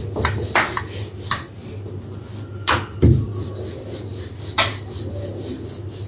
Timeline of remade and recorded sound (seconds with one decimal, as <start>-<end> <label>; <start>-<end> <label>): 0.0-6.1 recorded